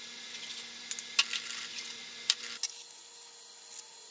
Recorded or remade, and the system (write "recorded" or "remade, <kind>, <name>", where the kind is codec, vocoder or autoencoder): recorded